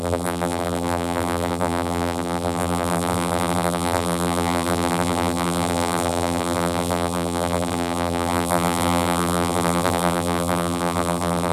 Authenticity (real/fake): fake